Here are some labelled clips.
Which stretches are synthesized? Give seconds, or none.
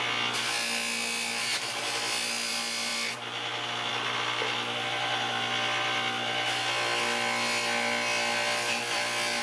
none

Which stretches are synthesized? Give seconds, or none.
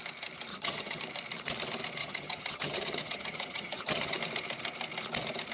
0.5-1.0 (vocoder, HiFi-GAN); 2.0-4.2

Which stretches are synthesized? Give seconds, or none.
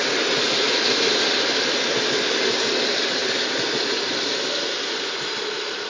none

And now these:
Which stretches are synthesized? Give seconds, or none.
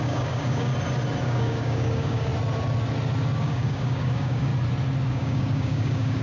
0.0-0.7 (codec, DAC); 1.2-2.3; 3.4-4.5; 5.1-6.2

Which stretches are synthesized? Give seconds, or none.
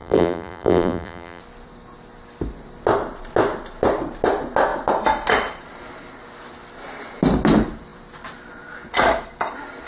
0.0-1.4 (vocoder, BigVGAN v2)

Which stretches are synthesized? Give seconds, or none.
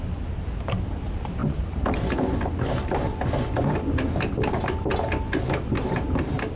none